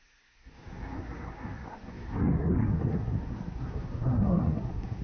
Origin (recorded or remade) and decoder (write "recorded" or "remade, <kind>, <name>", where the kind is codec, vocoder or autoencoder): remade, codec, SNAC